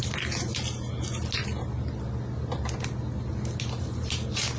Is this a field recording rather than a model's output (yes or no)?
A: yes